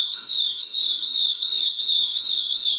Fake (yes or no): yes